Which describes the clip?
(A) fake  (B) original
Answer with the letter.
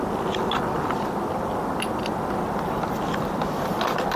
B